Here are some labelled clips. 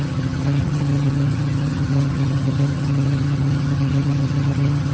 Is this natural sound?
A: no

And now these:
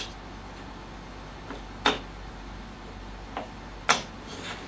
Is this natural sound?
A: yes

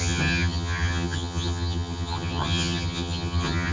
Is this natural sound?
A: no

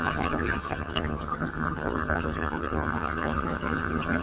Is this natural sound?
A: no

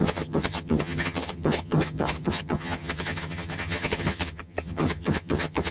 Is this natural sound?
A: no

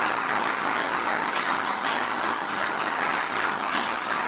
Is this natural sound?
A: no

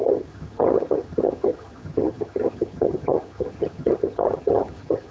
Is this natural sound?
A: no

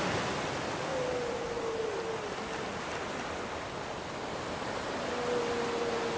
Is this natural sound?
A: yes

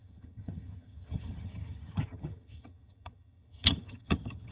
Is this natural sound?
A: no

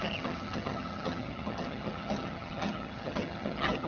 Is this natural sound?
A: no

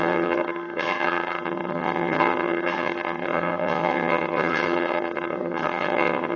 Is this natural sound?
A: no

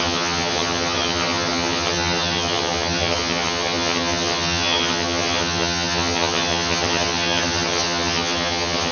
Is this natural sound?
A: no